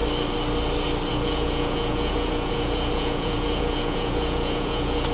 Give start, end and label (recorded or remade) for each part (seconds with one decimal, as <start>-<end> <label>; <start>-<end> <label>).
0.0-1.1 recorded; 1.1-5.1 remade